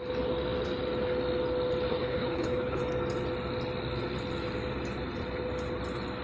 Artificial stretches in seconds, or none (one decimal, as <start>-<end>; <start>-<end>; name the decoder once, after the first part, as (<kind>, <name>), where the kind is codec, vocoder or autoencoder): 1.9-2.8 (codec, HILCodec)